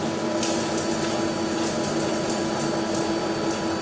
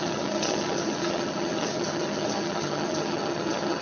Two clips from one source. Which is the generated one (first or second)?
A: second